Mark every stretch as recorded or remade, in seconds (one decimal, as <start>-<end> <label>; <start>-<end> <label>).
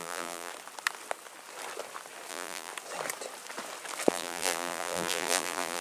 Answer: 0.0-0.5 remade; 0.5-2.3 recorded; 2.3-2.7 remade; 2.7-4.1 recorded; 4.1-5.8 remade